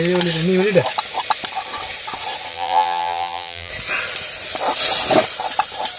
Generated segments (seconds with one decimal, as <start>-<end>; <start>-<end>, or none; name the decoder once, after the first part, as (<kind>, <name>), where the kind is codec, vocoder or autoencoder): 2.5-3.7 (vocoder, BigVGAN v2)